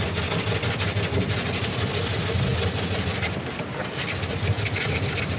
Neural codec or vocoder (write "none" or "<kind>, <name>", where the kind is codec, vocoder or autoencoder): none